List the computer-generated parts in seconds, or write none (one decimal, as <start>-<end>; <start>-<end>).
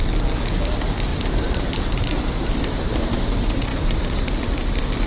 1.1-2.9; 3.7-4.3